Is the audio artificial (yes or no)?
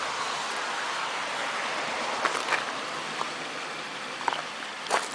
yes